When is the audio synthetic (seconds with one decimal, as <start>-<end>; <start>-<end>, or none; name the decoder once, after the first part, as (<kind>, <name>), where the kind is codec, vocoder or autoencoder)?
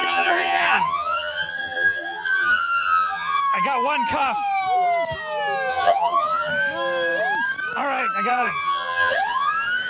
0.0-3.4 (vocoder, HiFi-GAN); 5.7-6.5; 8.3-9.5